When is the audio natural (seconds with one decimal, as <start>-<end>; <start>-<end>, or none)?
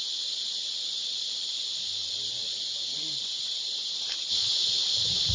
0.0-2.0; 3.6-5.3